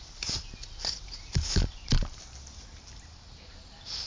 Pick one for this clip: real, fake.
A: real